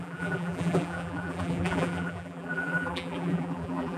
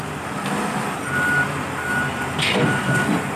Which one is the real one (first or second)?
second